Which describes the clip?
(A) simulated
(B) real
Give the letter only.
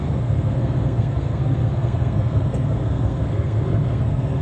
A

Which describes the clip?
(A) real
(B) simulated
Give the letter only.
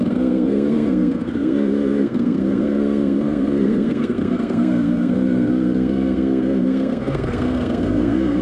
B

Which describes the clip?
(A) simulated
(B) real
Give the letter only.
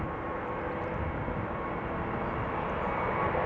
B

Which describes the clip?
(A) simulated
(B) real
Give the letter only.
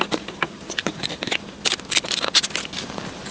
B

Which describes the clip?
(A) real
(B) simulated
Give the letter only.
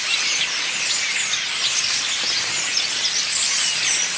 A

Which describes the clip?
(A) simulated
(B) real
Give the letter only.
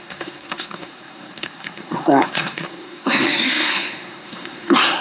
A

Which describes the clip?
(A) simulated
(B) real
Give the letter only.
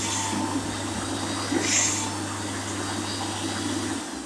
B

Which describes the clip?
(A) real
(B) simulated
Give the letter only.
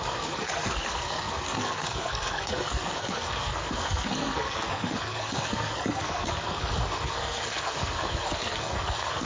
B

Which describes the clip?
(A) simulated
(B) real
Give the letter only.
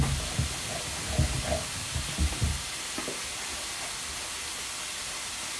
B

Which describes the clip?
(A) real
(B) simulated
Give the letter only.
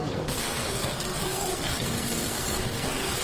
B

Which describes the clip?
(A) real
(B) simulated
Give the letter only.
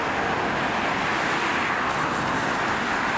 A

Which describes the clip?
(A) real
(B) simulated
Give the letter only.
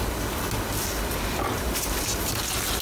A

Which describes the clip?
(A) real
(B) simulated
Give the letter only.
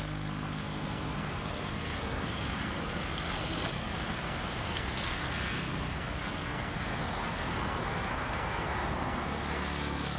B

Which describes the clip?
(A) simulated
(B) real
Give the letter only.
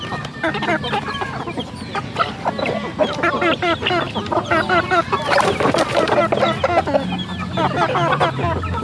B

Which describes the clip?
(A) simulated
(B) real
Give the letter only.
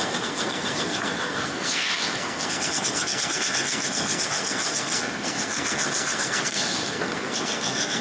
A